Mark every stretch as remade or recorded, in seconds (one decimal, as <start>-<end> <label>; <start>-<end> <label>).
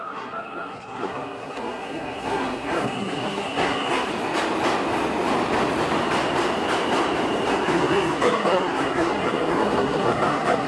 0.0-4.1 remade; 4.1-7.5 recorded; 7.5-10.7 remade